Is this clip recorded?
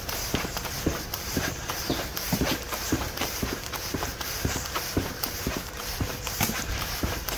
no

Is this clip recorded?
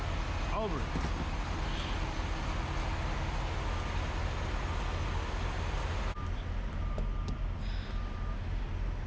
yes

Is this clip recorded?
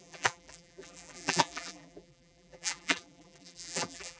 no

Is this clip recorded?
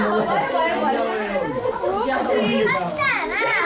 yes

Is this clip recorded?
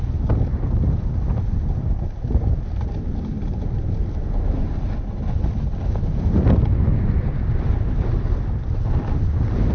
yes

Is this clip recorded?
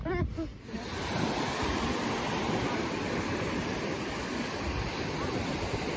no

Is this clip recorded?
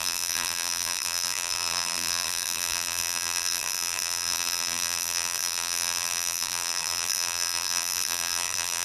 no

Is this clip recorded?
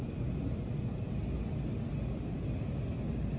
yes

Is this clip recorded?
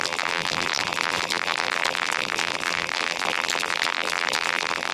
no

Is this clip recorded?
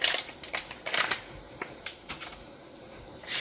no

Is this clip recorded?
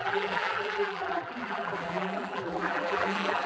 no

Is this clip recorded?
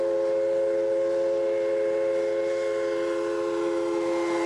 yes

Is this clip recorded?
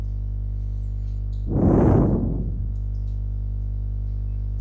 yes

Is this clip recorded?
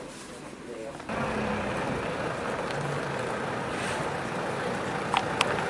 yes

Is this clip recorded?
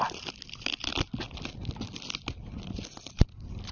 yes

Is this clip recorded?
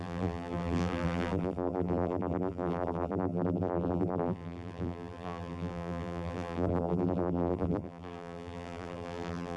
no